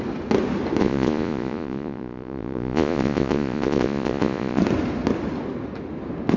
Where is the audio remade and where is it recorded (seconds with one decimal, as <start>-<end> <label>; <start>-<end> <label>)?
0.0-0.8 recorded; 0.8-4.6 remade; 4.6-6.4 recorded